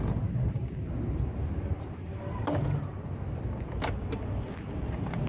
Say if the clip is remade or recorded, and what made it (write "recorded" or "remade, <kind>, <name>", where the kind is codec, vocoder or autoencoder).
recorded